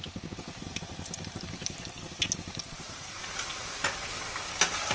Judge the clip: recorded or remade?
recorded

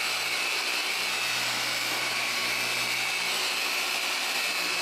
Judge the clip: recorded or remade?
recorded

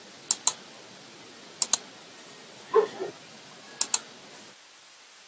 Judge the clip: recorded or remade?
recorded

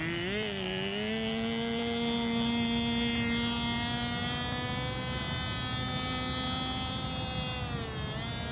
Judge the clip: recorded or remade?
recorded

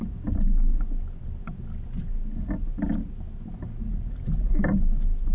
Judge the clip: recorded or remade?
recorded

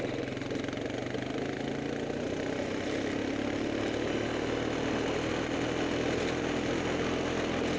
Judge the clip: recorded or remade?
recorded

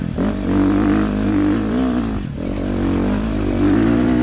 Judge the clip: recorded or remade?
recorded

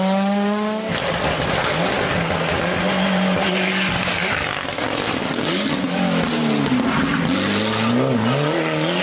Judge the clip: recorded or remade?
recorded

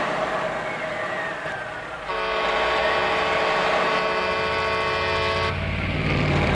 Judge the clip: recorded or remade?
remade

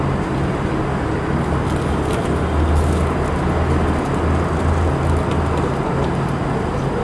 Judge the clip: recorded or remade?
recorded